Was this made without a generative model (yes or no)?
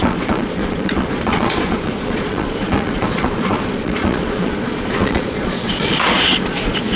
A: no